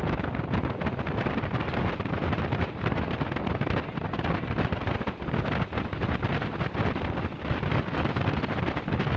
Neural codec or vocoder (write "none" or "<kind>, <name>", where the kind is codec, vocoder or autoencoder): vocoder, BigVGAN v2